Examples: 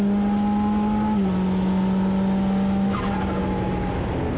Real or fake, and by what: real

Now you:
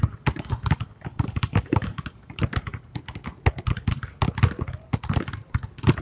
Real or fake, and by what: real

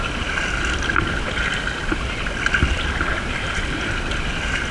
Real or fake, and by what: real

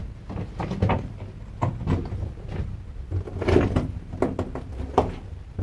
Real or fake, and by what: real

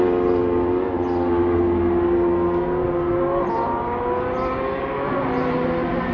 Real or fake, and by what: real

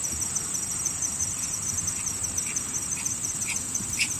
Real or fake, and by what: fake, vocoder, BigVGAN v2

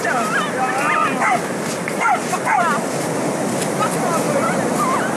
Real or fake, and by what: real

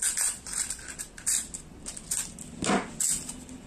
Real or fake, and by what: real